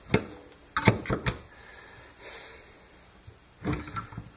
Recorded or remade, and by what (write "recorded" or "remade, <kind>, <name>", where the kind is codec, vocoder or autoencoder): recorded